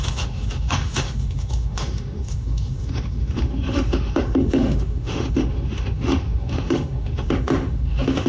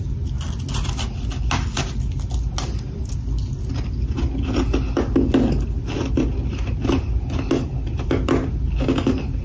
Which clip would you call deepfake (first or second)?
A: first